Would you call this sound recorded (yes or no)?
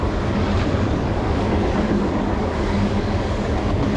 no